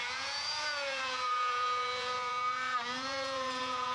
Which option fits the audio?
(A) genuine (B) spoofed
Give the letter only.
B